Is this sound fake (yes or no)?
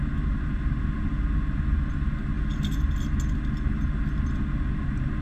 no